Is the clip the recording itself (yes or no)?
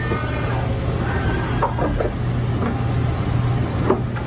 yes